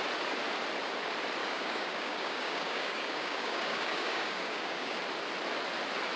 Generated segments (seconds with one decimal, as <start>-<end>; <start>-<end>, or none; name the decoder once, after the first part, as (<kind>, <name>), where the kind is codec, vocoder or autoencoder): 1.4-5.0 (codec, DAC)